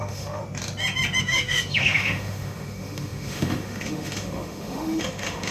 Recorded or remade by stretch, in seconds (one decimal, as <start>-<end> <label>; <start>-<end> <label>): 0.0-0.4 remade; 0.4-1.2 recorded; 1.2-5.5 remade

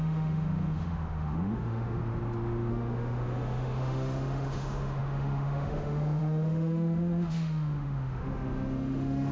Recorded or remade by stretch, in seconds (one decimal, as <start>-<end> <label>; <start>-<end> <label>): 0.0-2.0 remade; 2.0-2.7 recorded; 2.7-9.3 remade

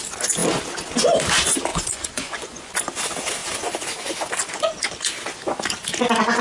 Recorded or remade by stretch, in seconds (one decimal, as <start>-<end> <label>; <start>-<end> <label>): 0.0-1.7 recorded; 1.7-2.7 remade; 2.7-6.4 recorded